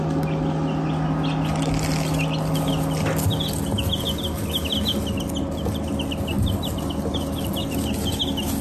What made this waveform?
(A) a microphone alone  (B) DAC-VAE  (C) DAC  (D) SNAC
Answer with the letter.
A